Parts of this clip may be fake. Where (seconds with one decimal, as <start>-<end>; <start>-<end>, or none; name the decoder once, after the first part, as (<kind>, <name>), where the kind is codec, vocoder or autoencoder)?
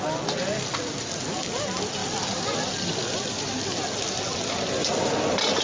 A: 2.0-5.6 (vocoder, BigVGAN v2)